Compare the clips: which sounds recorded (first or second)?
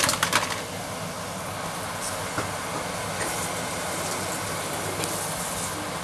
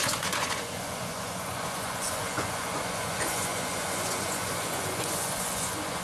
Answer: first